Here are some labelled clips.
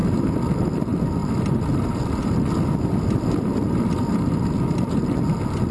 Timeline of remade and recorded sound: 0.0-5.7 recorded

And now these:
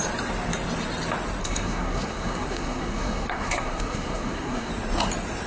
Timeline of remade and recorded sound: 0.0-1.4 recorded; 1.4-4.7 remade; 4.7-5.5 recorded

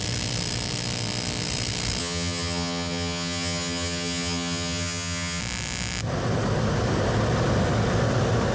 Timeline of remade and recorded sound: 0.0-2.0 recorded; 2.0-5.4 remade; 5.4-8.5 recorded

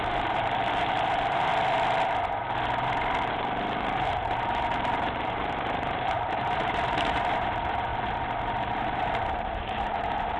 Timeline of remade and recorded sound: 0.0-1.5 remade; 1.5-3.3 recorded; 3.3-7.9 remade; 7.9-8.6 recorded; 8.6-10.4 remade

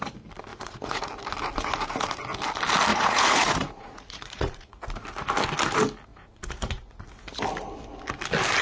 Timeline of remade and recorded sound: 0.0-0.5 recorded; 0.5-1.1 remade; 1.1-2.9 recorded; 2.9-4.8 remade; 4.8-6.1 recorded; 6.1-7.0 remade; 7.0-8.6 recorded

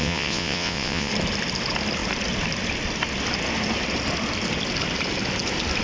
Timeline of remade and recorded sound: 0.0-1.1 remade; 1.1-5.8 recorded

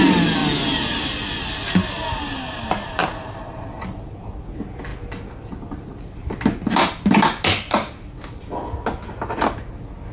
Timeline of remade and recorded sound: 0.0-10.1 recorded

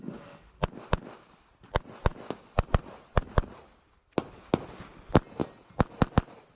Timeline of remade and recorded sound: 0.0-6.6 recorded